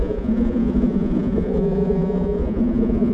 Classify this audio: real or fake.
fake